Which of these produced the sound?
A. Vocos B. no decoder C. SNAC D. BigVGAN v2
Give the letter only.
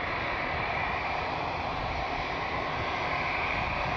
D